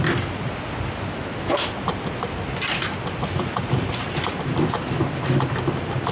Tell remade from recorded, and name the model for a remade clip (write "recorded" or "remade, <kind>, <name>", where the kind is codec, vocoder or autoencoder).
recorded